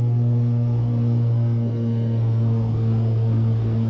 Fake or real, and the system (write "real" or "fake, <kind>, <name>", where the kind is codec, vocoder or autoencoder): fake, codec, SNAC